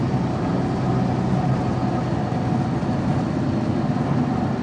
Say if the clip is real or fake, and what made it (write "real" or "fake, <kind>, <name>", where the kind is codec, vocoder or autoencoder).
real